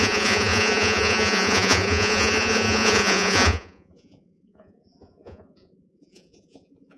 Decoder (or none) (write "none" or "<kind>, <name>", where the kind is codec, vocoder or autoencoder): vocoder, Vocos